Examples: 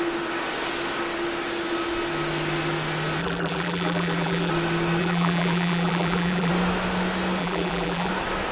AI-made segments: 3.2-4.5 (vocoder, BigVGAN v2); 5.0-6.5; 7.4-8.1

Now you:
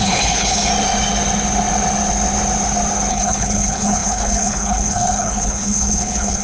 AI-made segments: 0.0-0.7 (codec, HILCodec); 3.1-6.4

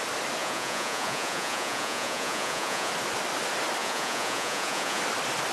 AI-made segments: 0.4-2.9 (vocoder, Vocos); 3.8-5.0

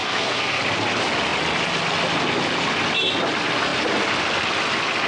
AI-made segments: 0.0-0.6 (codec, SNAC)

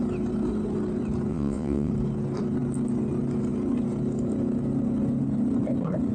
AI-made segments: 1.3-1.9 (vocoder, WaveNeXt)

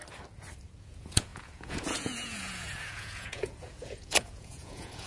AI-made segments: 0.8-5.1 (vocoder, Vocos)